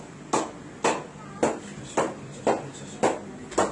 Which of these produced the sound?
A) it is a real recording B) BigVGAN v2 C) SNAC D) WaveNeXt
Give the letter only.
A